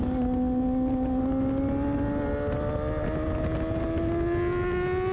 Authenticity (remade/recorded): recorded